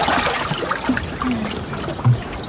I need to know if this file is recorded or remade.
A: recorded